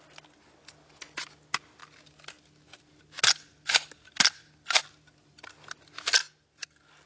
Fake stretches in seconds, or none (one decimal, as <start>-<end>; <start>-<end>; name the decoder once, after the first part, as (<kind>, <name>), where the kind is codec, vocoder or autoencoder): none